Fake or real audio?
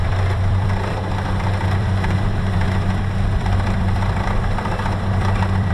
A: fake